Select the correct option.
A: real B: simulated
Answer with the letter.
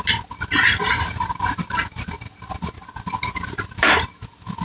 A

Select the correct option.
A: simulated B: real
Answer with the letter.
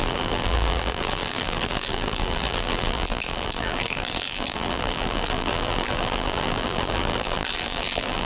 A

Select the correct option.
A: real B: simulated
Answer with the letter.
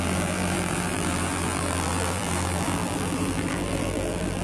B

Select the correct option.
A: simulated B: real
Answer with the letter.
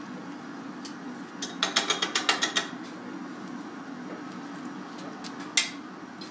B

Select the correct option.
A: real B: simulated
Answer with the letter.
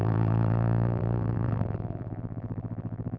B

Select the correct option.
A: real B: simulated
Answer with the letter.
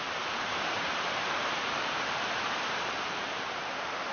B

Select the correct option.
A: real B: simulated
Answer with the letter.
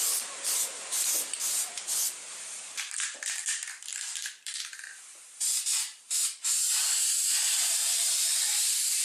B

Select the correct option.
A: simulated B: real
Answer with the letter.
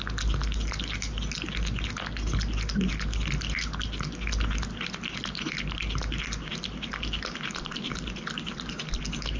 B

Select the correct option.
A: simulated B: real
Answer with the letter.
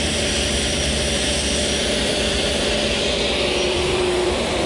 A